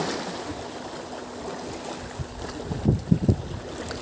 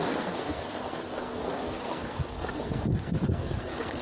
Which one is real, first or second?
first